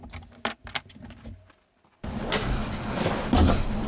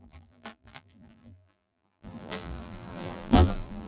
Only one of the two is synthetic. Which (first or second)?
second